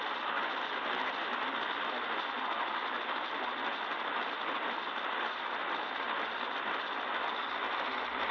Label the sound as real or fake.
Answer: real